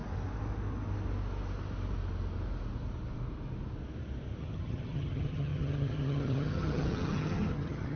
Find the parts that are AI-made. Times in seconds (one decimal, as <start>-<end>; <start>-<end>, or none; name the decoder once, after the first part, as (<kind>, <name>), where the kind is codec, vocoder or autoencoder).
4.4-8.0 (vocoder, HiFi-GAN)